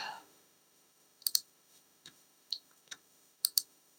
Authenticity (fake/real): fake